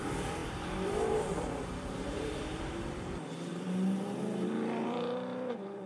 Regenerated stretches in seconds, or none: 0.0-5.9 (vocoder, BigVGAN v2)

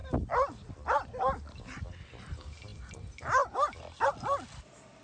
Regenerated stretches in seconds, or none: none

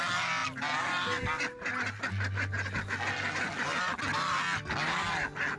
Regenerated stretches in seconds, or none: none

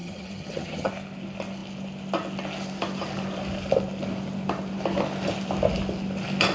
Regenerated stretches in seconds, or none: 0.0-0.9 (vocoder, HiFi-GAN)

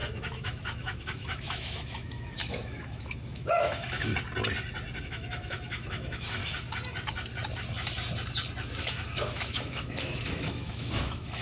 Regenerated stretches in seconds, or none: 0.0-4.1 (autoencoder, DAC-VAE); 5.0-6.4; 8.8-11.4

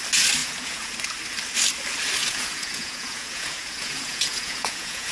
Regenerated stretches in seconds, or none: 0.4-0.9 (vocoder, Vocos); 2.2-5.1